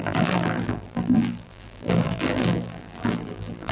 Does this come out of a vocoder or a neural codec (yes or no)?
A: yes